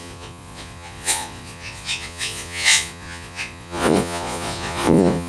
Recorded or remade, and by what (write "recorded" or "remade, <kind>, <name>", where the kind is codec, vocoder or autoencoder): remade, vocoder, Vocos